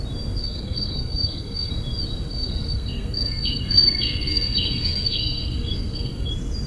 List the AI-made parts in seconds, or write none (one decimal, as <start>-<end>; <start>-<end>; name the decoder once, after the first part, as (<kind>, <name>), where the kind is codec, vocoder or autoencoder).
0.4-1.7 (codec, SNAC); 2.3-6.3